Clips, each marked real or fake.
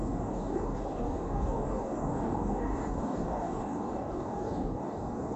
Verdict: fake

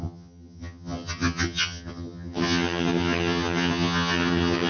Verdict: fake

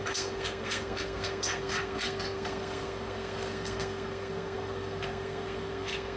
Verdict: fake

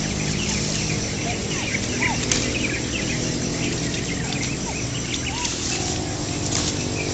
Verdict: real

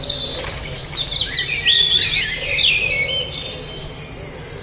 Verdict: real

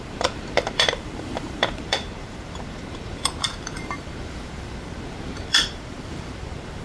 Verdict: fake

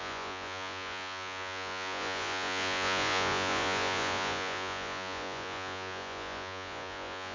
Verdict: fake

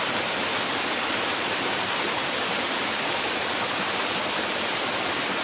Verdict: fake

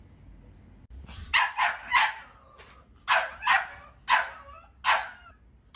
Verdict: real